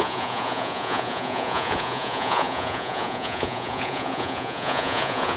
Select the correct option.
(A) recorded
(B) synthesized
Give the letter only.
B